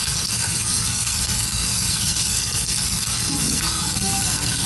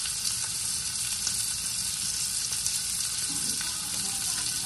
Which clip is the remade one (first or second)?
first